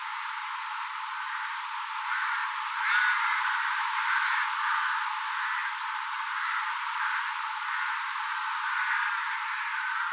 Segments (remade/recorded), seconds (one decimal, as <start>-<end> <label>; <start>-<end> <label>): 0.0-10.1 recorded